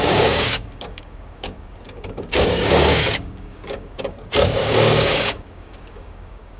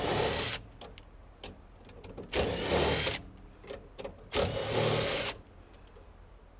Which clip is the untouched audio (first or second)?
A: second